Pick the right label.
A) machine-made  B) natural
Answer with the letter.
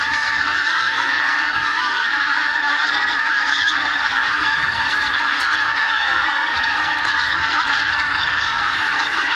A